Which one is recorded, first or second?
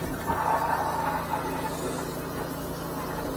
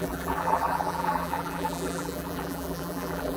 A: first